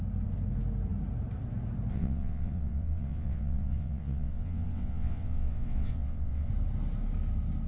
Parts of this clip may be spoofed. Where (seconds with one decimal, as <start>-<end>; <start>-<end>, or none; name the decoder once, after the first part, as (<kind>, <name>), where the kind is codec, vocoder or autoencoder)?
1.9-6.5 (vocoder, WaveNeXt)